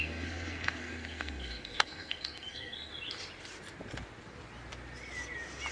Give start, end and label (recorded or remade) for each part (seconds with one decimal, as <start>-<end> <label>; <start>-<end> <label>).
0.0-2.9 remade; 2.9-5.7 recorded